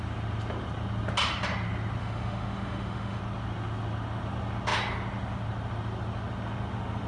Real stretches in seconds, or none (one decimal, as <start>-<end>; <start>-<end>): 0.0-2.0; 3.2-7.1